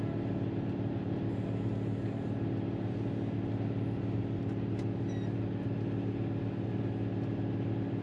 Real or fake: real